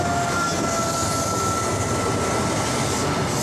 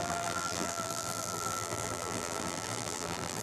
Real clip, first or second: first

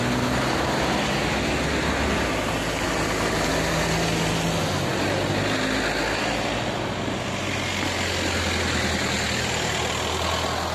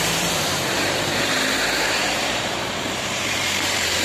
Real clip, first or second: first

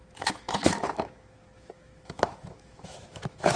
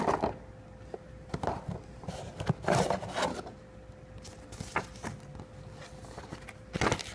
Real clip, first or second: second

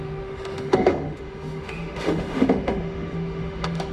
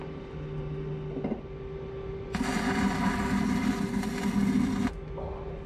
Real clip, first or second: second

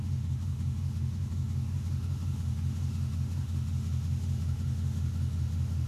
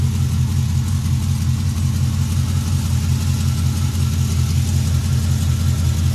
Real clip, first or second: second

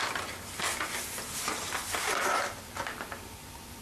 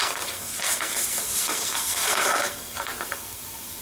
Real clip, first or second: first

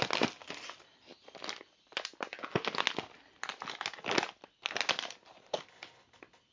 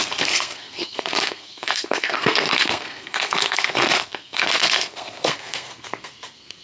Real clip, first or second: first